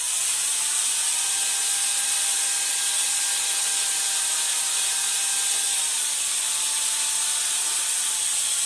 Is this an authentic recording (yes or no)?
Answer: yes